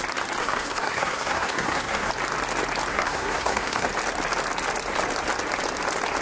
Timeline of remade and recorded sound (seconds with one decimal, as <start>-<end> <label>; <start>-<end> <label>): 0.0-0.4 recorded; 0.4-2.1 remade; 2.1-2.9 recorded; 2.9-3.9 remade; 3.9-6.2 recorded